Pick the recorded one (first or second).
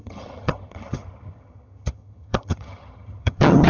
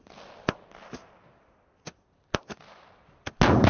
second